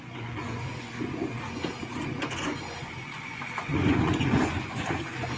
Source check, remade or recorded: remade